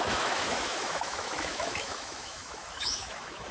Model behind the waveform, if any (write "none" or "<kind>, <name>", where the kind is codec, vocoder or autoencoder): autoencoder, DAC-VAE